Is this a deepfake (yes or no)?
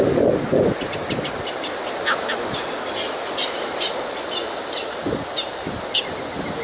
no